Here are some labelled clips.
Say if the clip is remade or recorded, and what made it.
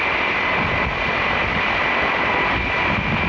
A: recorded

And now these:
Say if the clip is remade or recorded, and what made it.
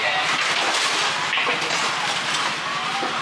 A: recorded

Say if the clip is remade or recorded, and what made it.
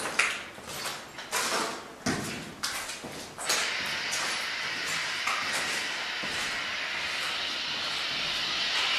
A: recorded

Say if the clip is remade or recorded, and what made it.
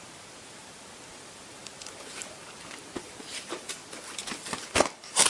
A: remade, vocoder, BigVGAN v2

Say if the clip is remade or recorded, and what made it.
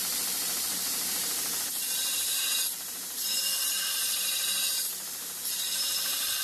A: remade, vocoder, BigVGAN v2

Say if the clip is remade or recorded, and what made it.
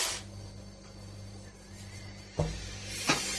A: recorded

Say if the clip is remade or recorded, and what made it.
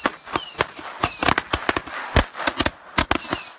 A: recorded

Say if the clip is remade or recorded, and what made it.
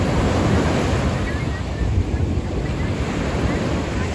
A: recorded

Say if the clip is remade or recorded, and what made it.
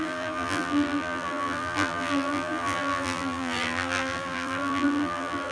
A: remade, vocoder, BigVGAN v2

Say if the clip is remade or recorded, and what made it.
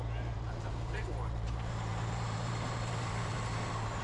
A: remade, vocoder, BigVGAN v2